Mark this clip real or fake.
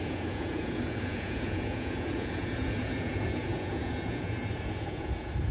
fake